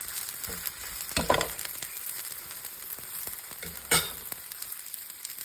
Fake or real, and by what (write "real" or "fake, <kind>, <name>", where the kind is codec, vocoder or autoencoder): real